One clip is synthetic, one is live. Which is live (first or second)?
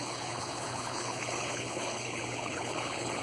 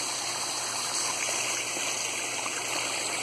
second